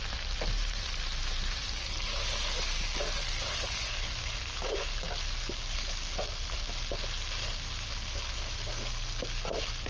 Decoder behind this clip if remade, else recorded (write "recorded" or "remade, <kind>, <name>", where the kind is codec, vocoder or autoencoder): recorded